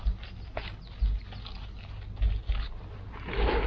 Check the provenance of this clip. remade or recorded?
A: recorded